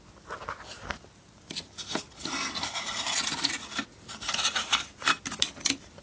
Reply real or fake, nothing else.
real